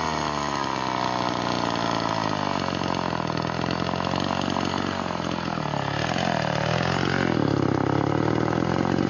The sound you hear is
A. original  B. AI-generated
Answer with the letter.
A